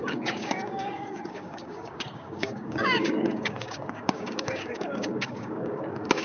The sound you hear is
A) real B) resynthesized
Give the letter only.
B